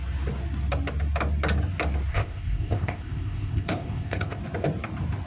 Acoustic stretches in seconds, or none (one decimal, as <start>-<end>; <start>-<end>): 0.0-2.1; 4.4-5.3